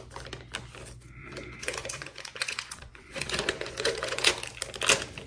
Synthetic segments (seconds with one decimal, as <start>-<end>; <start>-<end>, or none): 1.2-4.3